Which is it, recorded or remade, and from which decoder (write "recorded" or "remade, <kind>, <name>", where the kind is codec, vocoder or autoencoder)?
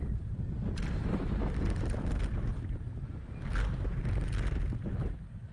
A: recorded